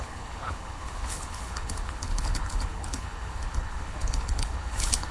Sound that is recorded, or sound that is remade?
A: remade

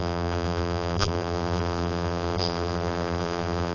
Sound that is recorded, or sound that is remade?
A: remade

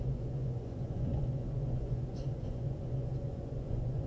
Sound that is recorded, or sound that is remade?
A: remade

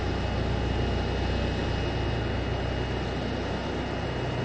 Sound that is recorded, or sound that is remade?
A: recorded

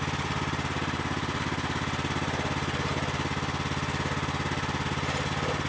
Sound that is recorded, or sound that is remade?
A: recorded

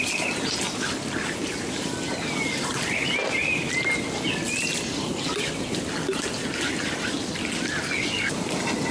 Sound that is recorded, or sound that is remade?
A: recorded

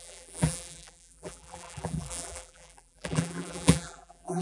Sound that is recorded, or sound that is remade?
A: remade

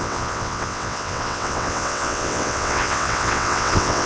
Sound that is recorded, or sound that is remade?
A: remade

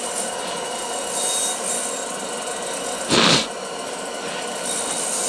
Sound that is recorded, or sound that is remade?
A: recorded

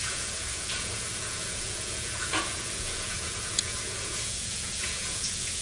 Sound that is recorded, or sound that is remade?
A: remade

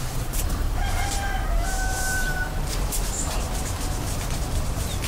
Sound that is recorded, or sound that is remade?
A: remade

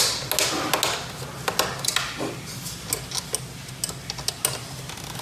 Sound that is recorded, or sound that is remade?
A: recorded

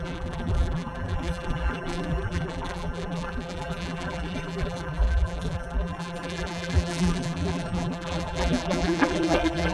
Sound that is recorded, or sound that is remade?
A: remade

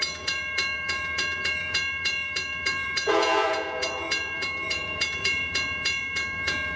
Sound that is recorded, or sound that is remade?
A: remade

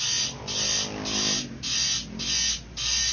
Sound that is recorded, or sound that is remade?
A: recorded